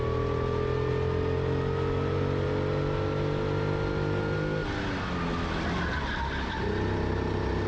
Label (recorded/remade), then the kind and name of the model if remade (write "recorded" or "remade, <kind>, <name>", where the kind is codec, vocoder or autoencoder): recorded